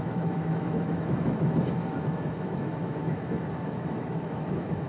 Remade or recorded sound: remade